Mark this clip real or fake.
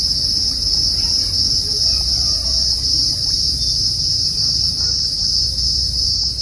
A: fake